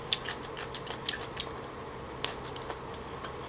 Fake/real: real